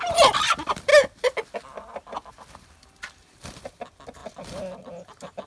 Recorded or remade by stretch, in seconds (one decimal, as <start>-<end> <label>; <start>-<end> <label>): 0.0-0.9 remade; 0.9-2.3 recorded; 2.3-5.5 remade